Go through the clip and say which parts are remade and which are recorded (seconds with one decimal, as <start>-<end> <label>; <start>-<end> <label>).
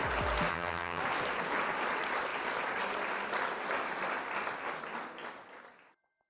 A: 0.0-0.5 recorded; 0.5-1.0 remade; 1.0-6.3 recorded